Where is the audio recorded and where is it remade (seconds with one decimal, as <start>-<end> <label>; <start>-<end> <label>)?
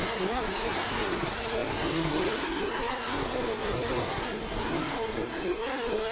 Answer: 0.0-6.1 remade